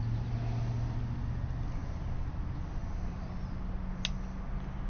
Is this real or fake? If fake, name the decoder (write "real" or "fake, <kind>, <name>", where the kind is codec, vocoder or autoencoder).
real